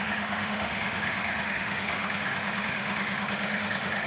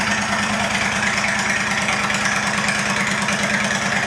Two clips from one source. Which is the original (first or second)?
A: second